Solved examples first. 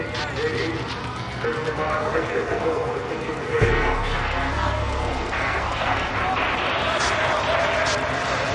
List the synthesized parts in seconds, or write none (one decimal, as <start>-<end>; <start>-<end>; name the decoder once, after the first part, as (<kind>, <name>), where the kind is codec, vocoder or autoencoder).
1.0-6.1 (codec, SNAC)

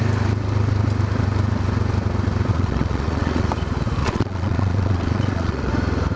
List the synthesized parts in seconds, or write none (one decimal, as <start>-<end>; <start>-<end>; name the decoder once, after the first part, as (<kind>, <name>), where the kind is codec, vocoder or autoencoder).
2.5-3.5 (vocoder, Vocos); 4.0-5.7

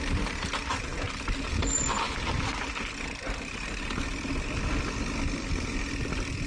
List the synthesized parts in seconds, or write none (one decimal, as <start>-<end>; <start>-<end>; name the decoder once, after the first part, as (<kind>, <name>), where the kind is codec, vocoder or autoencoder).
none